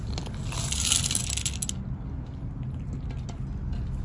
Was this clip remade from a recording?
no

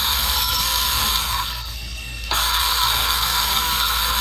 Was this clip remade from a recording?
yes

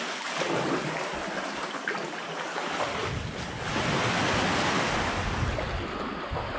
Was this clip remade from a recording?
no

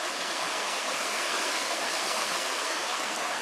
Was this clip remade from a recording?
yes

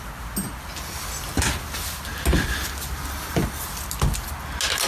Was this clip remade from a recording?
no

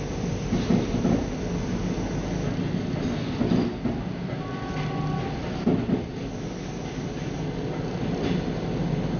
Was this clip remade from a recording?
no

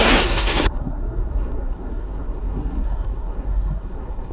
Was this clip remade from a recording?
yes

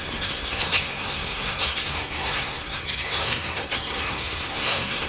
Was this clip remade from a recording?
yes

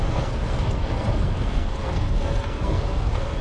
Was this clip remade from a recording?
yes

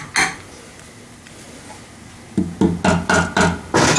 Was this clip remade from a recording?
no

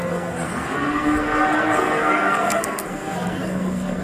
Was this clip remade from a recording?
yes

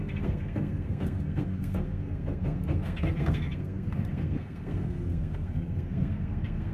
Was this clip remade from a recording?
yes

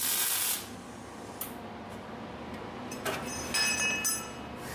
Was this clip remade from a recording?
no